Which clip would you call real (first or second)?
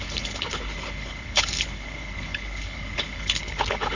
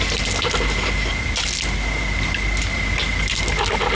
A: second